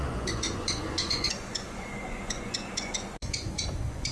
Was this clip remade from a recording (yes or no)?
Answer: yes